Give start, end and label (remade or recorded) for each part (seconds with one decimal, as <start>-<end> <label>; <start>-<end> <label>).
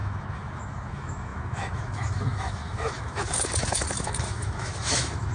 0.0-5.3 remade